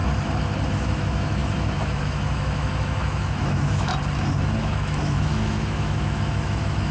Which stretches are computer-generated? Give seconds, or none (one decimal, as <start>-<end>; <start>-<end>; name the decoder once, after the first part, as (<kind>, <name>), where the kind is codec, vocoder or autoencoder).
0.7-3.9 (autoencoder, DAC-VAE); 4.6-6.9